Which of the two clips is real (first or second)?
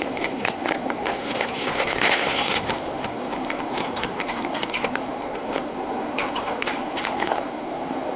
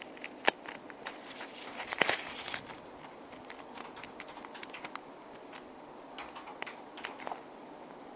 second